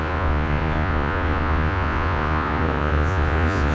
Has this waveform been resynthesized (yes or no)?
yes